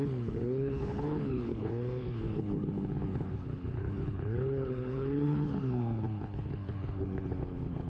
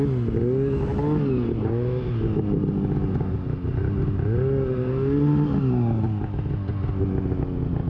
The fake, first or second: first